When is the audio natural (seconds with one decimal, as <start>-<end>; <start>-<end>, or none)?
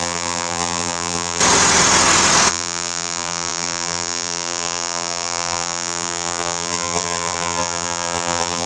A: 1.4-2.5